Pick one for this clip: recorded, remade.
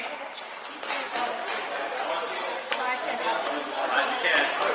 recorded